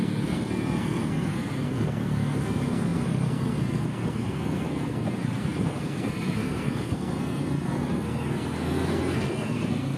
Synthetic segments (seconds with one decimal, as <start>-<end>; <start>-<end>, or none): 0.0-10.0